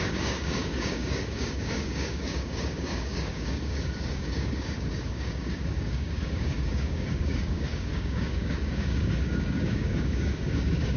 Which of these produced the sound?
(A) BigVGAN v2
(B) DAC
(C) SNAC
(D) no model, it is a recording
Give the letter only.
B